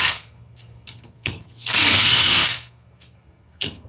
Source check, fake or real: fake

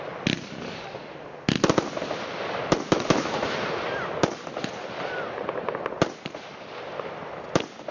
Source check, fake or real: real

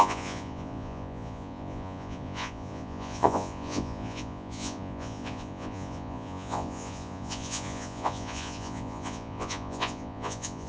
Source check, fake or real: fake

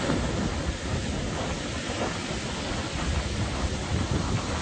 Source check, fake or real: real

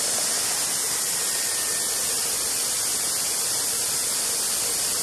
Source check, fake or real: real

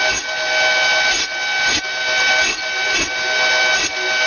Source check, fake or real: real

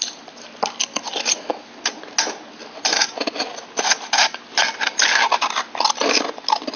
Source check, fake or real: real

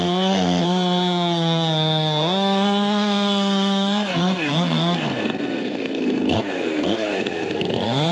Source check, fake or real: fake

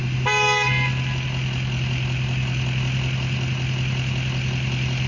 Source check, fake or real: real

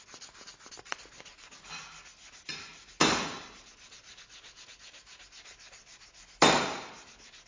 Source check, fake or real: real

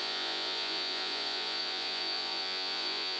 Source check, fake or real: fake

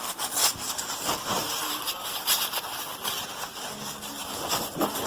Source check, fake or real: real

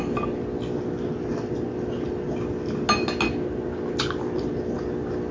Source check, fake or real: real